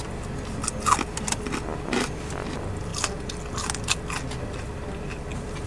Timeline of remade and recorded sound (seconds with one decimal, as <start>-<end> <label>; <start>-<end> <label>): 0.0-2.9 remade; 2.9-4.4 recorded; 4.4-5.7 remade